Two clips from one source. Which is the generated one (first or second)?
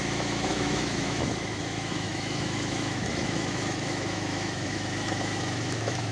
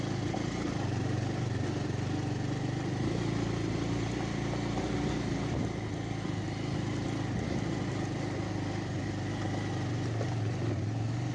first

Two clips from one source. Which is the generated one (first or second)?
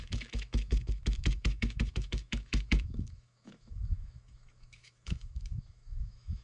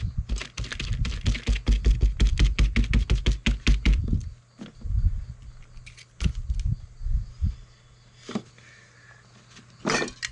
first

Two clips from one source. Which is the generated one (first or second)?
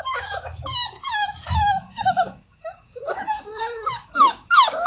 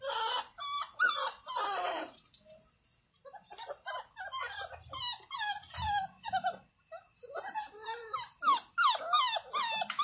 first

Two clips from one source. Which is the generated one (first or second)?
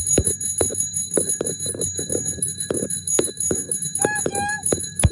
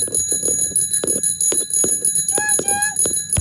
first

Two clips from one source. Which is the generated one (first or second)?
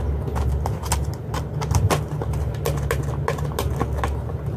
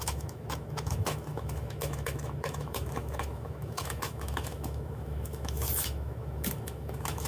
second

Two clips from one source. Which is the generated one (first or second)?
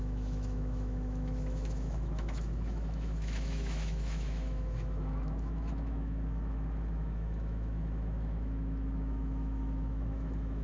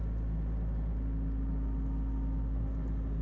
first